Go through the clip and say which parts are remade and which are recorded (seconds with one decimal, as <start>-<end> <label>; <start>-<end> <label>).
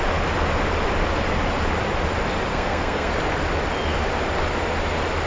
0.0-2.5 recorded; 2.5-3.1 remade; 3.1-5.3 recorded